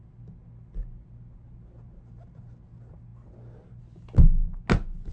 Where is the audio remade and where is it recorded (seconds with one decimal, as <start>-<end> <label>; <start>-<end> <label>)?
0.0-5.1 recorded